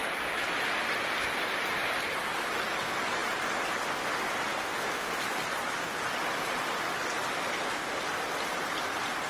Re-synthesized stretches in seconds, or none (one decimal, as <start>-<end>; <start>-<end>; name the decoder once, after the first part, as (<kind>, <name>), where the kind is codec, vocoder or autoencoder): none